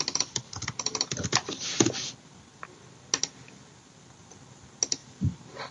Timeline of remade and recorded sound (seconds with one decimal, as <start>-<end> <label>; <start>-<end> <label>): 0.0-5.7 recorded